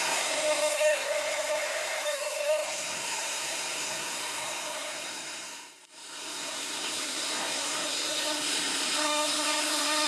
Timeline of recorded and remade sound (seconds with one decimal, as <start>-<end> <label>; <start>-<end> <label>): 0.0-10.1 remade